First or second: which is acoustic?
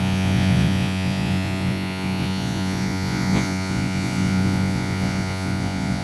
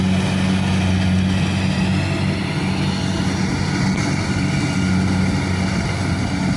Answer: second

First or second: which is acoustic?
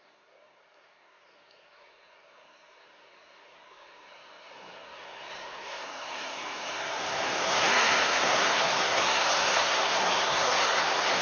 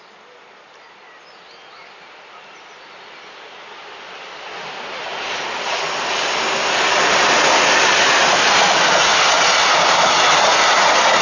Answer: second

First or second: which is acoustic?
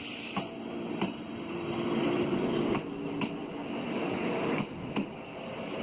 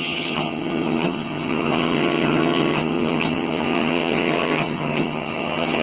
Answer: first